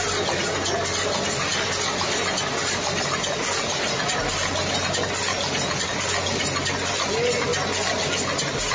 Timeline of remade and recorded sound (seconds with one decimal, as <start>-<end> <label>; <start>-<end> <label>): 0.0-8.7 recorded

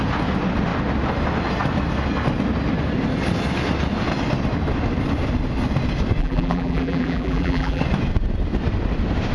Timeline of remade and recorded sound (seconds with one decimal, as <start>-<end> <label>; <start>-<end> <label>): 0.0-6.2 recorded; 6.2-7.8 remade; 7.8-9.3 recorded

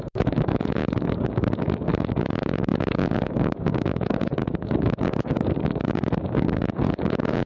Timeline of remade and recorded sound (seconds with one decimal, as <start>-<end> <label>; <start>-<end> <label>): 0.0-7.5 remade